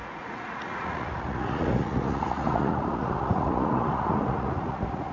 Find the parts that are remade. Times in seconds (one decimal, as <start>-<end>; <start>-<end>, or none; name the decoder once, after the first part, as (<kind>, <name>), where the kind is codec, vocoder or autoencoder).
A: 0.0-5.1 (vocoder, Vocos)